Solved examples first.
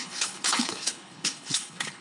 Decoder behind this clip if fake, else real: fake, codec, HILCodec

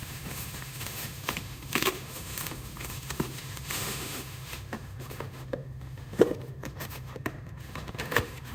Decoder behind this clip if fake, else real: fake, autoencoder, DAC-VAE